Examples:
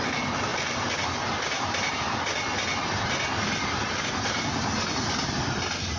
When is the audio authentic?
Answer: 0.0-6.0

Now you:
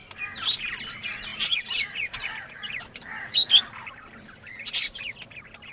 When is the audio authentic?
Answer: 0.0-1.3; 3.9-5.7

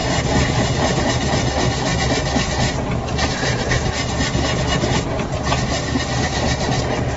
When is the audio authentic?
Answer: 0.0-7.2

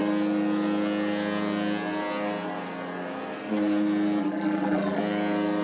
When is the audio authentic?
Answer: 0.0-4.2; 5.0-5.6

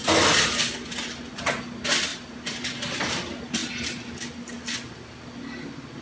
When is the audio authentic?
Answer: 0.0-2.1; 2.7-6.0